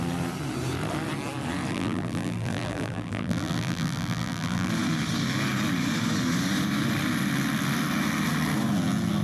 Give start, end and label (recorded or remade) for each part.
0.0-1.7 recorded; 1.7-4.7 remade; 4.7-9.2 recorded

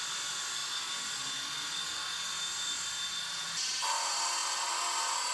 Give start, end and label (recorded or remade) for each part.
0.0-5.3 recorded

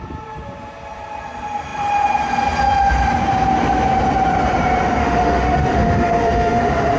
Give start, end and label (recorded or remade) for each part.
0.0-5.0 recorded; 5.0-6.6 remade; 6.6-7.0 recorded

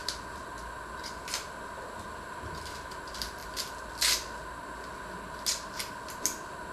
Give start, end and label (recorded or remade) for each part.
0.0-6.7 recorded

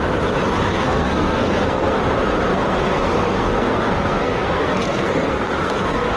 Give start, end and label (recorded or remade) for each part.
0.0-0.7 recorded; 0.7-2.0 remade; 2.0-2.5 recorded; 2.5-6.2 remade

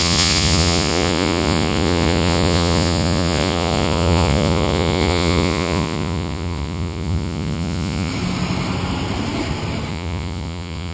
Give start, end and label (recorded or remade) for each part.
0.0-8.1 remade; 8.1-9.9 recorded; 9.9-10.9 remade

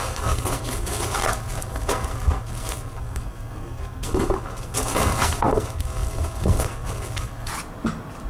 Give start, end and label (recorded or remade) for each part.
0.0-7.5 remade; 7.5-8.3 recorded